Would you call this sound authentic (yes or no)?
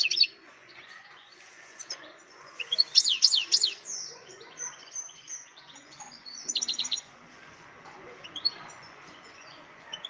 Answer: no